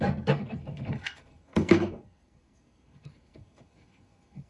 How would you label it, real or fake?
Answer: fake